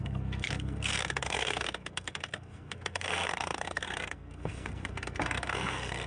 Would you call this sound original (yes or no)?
no